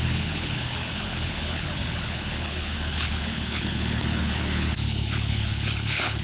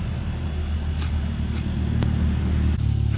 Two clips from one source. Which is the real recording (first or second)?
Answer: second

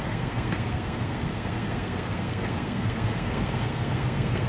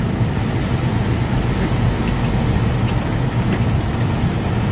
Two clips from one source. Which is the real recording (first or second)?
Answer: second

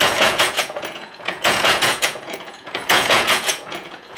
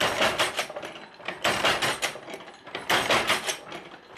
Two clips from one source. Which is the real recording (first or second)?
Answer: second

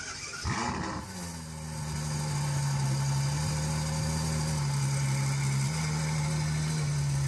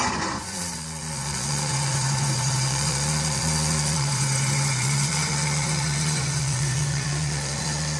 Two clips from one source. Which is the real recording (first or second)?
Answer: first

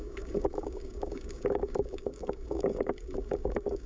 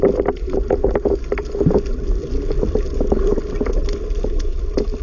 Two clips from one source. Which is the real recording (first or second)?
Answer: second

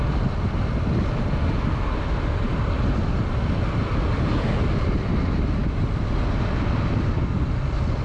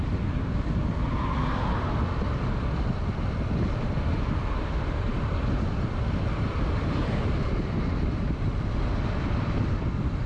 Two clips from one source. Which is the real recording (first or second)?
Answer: first